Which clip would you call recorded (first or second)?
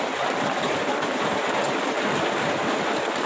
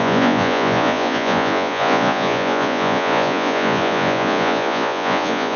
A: first